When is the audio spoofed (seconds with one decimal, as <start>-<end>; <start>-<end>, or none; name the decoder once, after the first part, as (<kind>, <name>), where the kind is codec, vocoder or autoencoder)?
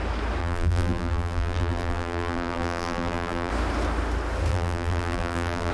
0.4-3.5 (vocoder, BigVGAN v2); 4.5-5.7